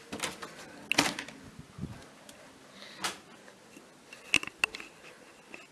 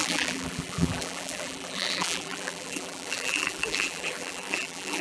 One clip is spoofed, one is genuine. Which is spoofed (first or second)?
second